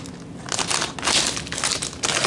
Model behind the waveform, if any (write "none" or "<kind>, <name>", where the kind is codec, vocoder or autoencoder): none